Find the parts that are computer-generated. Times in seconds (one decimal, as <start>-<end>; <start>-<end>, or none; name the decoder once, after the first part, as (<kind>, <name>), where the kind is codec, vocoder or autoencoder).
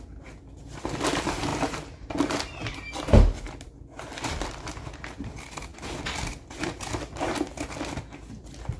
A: none